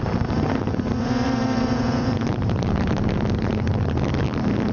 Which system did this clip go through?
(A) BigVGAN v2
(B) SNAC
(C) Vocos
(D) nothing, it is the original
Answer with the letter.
A